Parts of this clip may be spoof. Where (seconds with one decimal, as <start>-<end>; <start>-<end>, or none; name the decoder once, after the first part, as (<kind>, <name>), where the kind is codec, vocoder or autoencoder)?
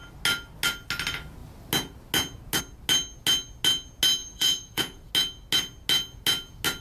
4.2-5.1 (vocoder, Vocos)